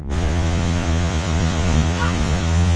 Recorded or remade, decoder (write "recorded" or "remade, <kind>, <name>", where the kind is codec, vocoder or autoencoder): remade, vocoder, Vocos